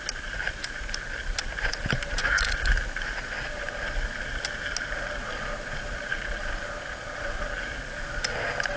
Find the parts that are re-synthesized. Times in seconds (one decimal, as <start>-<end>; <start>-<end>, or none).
none